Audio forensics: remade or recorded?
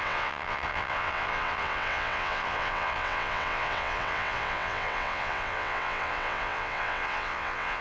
remade